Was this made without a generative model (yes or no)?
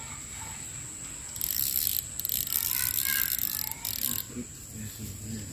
yes